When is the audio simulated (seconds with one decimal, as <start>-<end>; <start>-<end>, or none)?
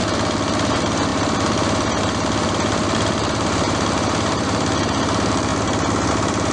0.7-5.5; 6.1-6.5